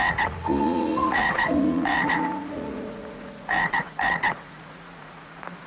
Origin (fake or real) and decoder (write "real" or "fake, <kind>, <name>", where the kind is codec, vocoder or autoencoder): fake, vocoder, Vocos